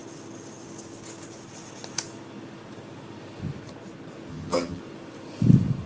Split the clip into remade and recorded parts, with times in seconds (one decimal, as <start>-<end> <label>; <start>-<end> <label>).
0.0-4.3 recorded; 4.3-4.8 remade; 4.8-5.9 recorded